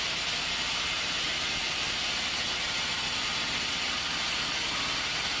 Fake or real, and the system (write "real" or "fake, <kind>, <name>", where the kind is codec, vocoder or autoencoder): real